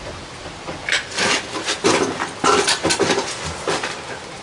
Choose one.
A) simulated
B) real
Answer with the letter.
B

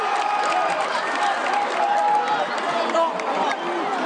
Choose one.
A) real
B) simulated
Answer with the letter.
A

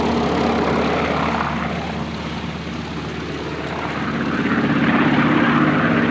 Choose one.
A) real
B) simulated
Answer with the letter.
A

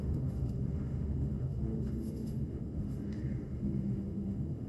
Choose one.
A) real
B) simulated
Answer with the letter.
B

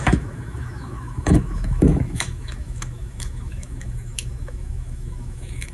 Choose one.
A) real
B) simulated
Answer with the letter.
B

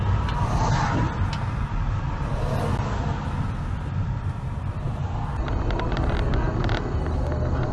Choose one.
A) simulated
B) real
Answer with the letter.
B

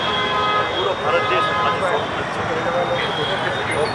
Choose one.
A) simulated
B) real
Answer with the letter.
B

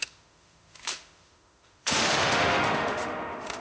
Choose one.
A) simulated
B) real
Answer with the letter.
A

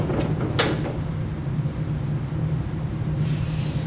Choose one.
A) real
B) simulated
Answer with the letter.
A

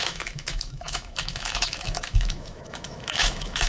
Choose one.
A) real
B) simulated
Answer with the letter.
B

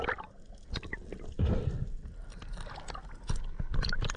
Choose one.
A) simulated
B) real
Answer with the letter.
B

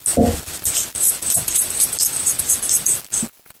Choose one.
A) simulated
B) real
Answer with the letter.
B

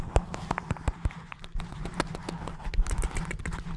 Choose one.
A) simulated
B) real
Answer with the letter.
B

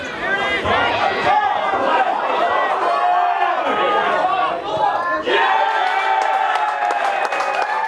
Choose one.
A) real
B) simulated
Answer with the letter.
A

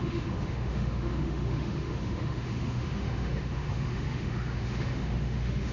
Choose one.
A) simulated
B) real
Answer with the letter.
A